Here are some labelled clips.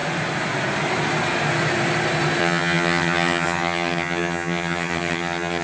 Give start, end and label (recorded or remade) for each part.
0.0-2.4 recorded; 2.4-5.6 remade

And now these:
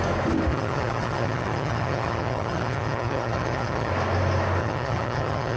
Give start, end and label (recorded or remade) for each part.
0.0-0.5 recorded; 0.5-3.9 remade; 3.9-4.6 recorded; 4.6-5.6 remade

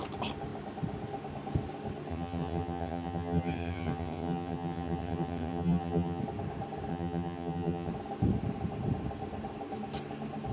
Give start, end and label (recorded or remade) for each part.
0.0-2.1 recorded; 2.1-6.2 remade; 6.2-6.9 recorded; 6.9-7.9 remade; 7.9-10.5 recorded

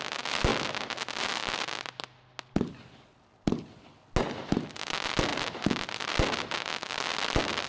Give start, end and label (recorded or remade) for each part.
0.0-7.7 recorded

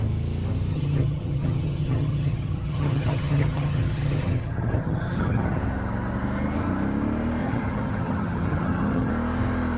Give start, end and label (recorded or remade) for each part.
0.0-0.7 recorded; 0.7-5.6 remade; 5.6-7.4 recorded; 7.4-9.1 remade; 9.1-9.8 recorded